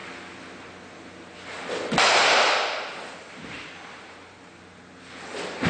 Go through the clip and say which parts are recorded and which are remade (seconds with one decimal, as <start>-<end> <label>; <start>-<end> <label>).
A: 0.0-5.7 recorded